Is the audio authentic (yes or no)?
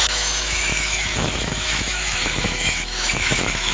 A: no